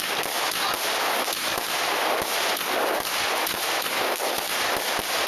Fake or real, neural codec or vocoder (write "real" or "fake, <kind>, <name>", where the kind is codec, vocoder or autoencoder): real